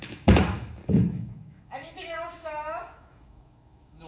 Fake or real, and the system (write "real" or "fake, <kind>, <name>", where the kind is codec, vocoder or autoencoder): fake, autoencoder, DAC-VAE